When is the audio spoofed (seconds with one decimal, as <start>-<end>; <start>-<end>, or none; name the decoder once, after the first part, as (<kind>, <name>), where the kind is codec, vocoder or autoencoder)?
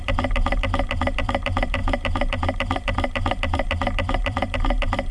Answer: 0.0-5.1 (vocoder, BigVGAN v2)